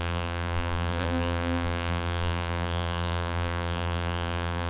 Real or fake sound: fake